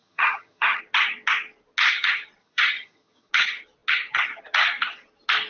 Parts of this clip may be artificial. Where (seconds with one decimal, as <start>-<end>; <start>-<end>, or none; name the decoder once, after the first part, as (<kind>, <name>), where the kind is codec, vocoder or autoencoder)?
0.0-0.8 (vocoder, HiFi-GAN); 2.4-3.3